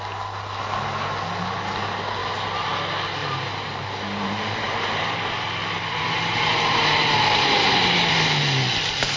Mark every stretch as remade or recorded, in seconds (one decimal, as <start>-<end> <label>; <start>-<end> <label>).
0.0-2.2 recorded; 2.2-2.7 remade; 2.7-3.2 recorded; 3.2-7.7 remade; 7.7-9.2 recorded